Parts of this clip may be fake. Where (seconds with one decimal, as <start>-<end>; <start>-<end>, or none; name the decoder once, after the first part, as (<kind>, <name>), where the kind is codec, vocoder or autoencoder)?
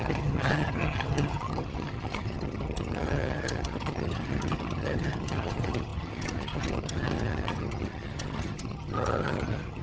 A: 0.0-9.8 (vocoder, HiFi-GAN)